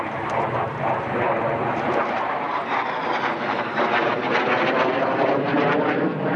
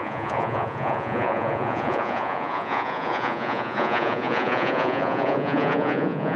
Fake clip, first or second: second